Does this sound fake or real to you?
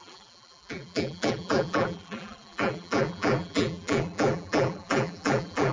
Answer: fake